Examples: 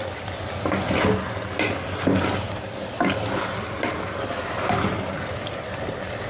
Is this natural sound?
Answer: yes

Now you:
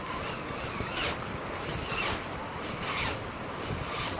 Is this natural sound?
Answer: yes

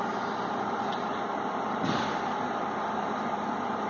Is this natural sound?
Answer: yes